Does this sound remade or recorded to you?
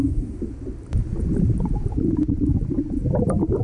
remade